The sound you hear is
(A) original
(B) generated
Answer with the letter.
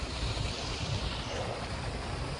B